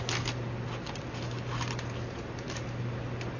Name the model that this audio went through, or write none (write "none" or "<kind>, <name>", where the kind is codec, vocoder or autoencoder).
none